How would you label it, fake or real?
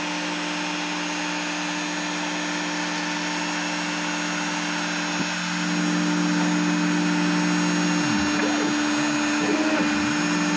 real